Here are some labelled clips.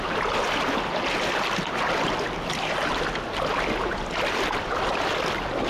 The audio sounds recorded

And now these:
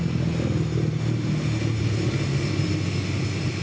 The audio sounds recorded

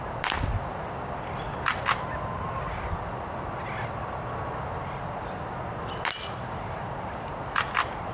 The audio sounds recorded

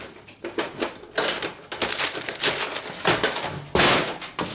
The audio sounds recorded